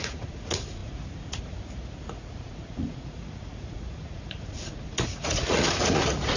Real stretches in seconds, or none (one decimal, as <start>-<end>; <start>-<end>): none